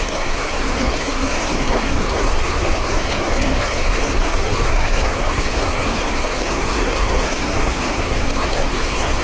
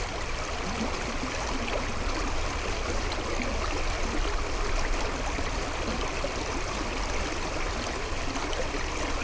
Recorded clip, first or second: second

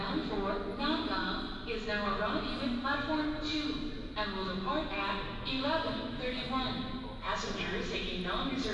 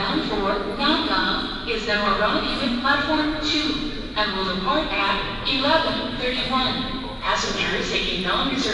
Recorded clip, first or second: first